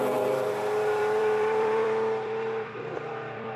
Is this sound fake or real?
fake